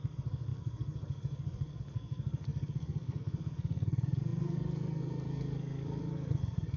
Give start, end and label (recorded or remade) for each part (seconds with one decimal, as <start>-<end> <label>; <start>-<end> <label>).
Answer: 0.0-6.8 remade